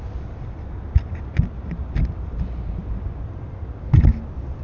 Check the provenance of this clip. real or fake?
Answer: real